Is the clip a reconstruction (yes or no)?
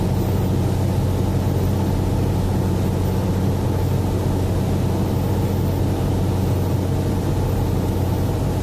no